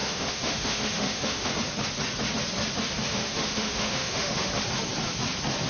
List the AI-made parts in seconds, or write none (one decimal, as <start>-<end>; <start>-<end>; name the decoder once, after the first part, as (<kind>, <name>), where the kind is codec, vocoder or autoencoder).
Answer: 0.0-1.5 (autoencoder, DAC-VAE); 3.1-4.5